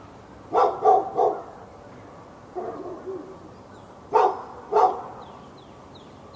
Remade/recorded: recorded